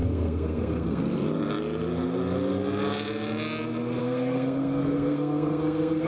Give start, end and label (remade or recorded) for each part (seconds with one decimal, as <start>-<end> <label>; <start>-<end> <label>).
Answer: 0.0-1.0 remade; 1.0-4.0 recorded; 4.0-6.1 remade